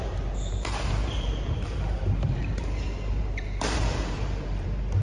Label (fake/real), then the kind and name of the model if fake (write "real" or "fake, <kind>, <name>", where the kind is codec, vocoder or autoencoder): fake, vocoder, BigVGAN v2